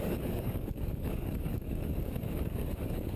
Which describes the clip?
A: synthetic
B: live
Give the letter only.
A